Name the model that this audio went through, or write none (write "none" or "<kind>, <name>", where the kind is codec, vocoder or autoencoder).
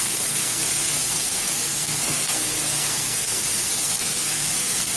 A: codec, SNAC